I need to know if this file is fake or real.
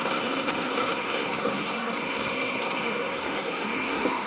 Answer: fake